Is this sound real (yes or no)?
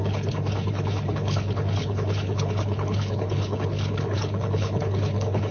no